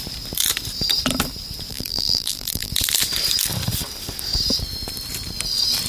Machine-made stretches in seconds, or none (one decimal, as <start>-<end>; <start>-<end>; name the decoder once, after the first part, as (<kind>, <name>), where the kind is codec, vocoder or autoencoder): 1.7-2.7 (vocoder, BigVGAN v2)